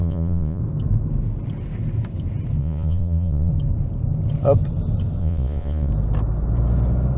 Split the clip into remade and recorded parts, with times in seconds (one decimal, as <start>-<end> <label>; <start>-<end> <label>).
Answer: 0.0-0.6 remade; 0.6-2.6 recorded; 2.6-3.5 remade; 3.5-5.2 recorded; 5.2-5.9 remade; 5.9-7.2 recorded